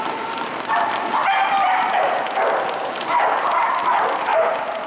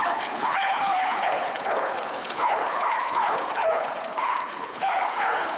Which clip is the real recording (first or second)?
first